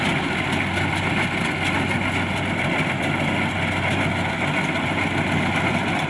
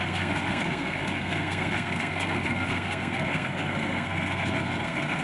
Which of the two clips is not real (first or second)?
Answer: second